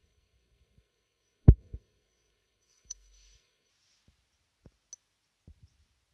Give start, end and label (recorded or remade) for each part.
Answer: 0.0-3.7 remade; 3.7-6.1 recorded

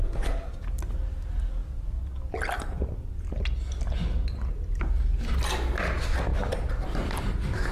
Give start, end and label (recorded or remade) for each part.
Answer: 0.0-7.7 recorded

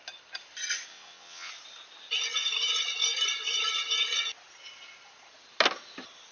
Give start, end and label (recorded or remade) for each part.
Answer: 0.0-0.9 recorded; 0.9-1.5 remade; 1.5-6.3 recorded

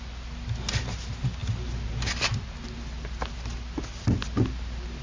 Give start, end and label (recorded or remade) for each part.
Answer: 0.0-5.0 recorded

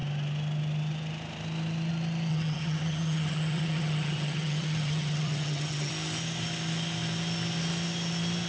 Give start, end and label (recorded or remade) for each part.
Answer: 0.0-2.3 recorded; 2.3-5.9 remade; 5.9-8.5 recorded

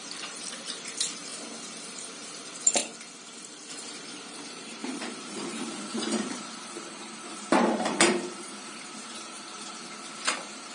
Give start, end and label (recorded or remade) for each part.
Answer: 0.0-1.3 remade; 1.3-1.9 recorded; 1.9-2.8 remade; 2.8-3.7 recorded; 3.7-10.7 remade

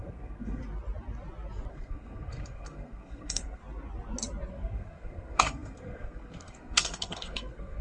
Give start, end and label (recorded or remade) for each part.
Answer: 0.0-0.6 remade; 0.6-1.7 recorded; 1.7-3.6 remade; 3.6-4.5 recorded; 4.5-7.8 remade